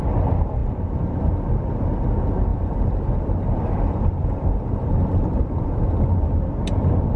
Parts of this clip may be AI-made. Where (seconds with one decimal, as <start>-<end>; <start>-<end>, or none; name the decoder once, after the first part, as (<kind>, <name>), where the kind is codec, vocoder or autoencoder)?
2.5-6.2 (vocoder, BigVGAN v2)